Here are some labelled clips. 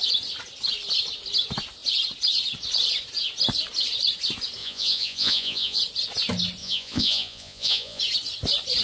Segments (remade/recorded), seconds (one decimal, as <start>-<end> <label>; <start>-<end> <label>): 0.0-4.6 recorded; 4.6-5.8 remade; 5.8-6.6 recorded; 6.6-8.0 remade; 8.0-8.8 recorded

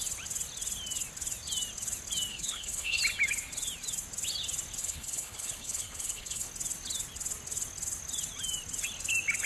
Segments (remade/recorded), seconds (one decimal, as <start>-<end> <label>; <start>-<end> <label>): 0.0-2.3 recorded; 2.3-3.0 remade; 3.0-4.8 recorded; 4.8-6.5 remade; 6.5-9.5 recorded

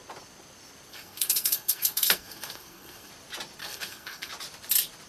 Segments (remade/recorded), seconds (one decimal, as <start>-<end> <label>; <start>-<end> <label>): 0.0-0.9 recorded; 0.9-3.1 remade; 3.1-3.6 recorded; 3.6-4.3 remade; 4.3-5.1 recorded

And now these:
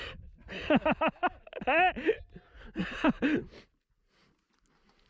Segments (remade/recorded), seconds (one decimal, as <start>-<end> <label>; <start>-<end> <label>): 0.0-5.1 recorded

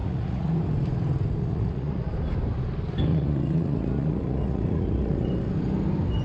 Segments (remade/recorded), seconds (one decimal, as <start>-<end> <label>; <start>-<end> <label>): 0.0-0.5 remade; 0.5-1.4 recorded; 1.4-2.1 remade; 2.1-3.1 recorded; 3.1-5.3 remade; 5.3-6.2 recorded